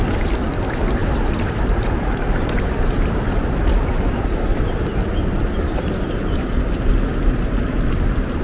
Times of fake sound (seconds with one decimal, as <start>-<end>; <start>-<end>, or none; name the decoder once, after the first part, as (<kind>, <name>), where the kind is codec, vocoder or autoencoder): 1.0-4.0 (vocoder, BigVGAN v2); 4.5-6.9